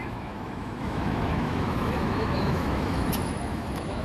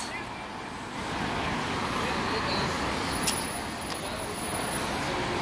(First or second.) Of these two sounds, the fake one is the first